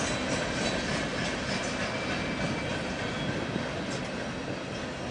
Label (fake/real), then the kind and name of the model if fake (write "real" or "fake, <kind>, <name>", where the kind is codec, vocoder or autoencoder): real